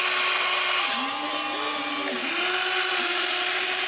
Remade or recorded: recorded